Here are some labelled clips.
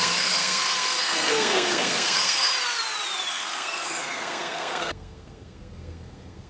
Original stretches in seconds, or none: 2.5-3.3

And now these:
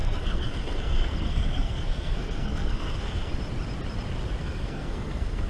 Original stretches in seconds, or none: 3.3-4.4

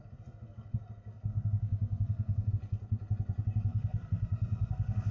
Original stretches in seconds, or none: 0.0-1.3; 2.5-3.7

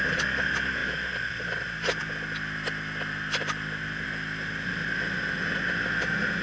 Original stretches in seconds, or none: 0.0-6.4

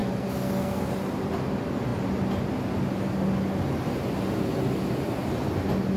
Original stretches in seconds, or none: 0.9-6.0

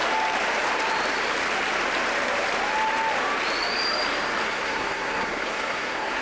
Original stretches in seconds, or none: 0.0-4.4

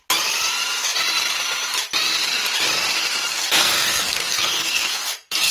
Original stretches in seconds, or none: 0.0-3.3